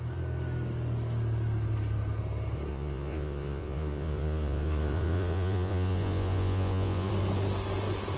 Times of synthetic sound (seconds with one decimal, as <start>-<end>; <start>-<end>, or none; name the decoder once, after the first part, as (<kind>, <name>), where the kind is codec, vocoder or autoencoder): 2.7-7.1 (vocoder, Vocos)